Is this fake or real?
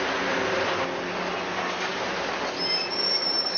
real